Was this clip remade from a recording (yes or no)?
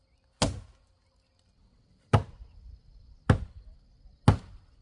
no